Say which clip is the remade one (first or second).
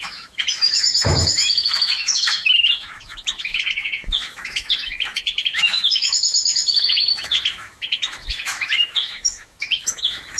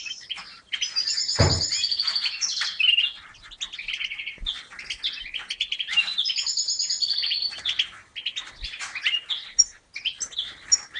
first